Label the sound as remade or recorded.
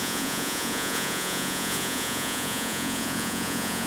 remade